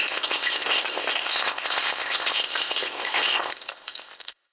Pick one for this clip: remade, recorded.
remade